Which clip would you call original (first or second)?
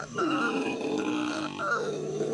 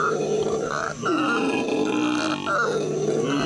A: second